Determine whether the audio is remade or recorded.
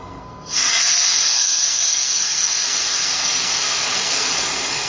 remade